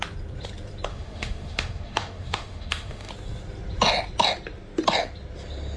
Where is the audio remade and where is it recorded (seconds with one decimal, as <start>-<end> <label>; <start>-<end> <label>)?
0.0-0.9 recorded; 0.9-3.1 remade; 3.1-5.8 recorded